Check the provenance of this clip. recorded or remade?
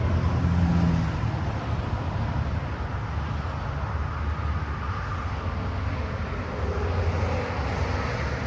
recorded